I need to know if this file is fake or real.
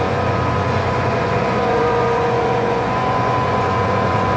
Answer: fake